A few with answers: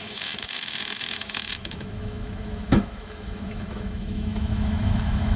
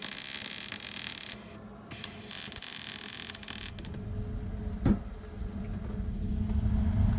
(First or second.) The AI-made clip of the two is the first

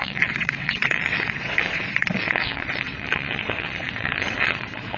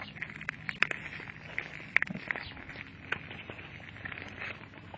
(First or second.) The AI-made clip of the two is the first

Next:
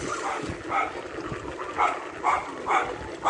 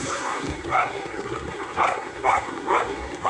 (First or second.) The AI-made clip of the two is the second